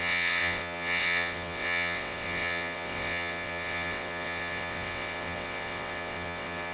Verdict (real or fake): fake